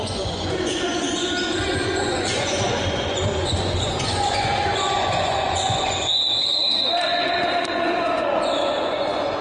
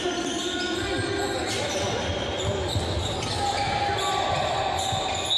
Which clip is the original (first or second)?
second